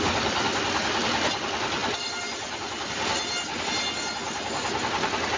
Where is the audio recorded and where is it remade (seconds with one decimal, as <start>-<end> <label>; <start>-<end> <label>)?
0.0-5.4 recorded